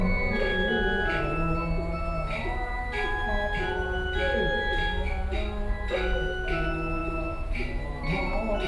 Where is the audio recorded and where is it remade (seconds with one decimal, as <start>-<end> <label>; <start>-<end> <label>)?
0.0-8.7 recorded

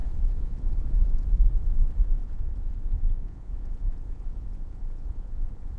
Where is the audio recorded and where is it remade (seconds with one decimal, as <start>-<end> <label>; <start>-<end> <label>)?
0.0-1.3 remade; 1.3-2.2 recorded; 2.2-5.8 remade

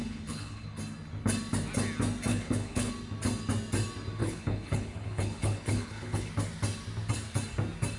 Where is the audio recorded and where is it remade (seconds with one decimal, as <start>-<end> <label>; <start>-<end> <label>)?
0.0-0.8 remade; 0.8-2.3 recorded; 2.3-2.9 remade; 2.9-4.2 recorded; 4.2-6.3 remade; 6.3-8.0 recorded

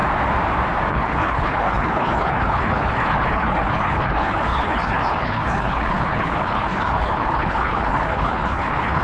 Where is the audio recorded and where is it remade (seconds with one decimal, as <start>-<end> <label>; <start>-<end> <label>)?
0.0-0.9 recorded; 0.9-9.0 remade

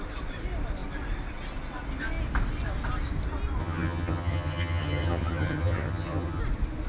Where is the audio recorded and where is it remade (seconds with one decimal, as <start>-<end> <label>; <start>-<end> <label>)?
0.0-3.6 recorded; 3.6-6.4 remade; 6.4-6.9 recorded

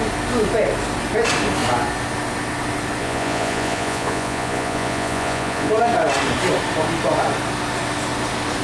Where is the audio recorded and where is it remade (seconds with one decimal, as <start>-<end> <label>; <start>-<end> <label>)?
0.0-3.0 recorded; 3.0-5.7 remade; 5.7-8.6 recorded

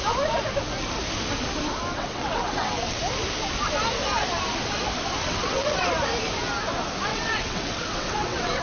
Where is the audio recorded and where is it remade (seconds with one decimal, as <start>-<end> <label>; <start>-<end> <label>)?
0.0-2.0 recorded; 2.0-3.0 remade; 3.0-5.2 recorded; 5.2-5.9 remade; 5.9-7.1 recorded; 7.1-8.6 remade